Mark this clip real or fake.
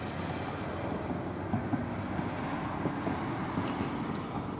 real